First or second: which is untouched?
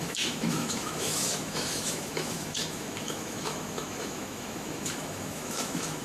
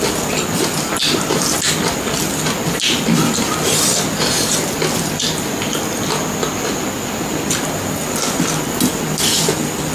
second